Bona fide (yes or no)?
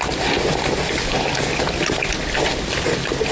yes